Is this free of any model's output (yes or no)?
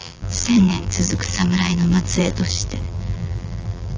no